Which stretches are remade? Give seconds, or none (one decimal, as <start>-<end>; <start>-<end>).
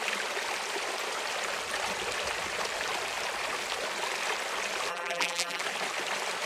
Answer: 4.9-5.6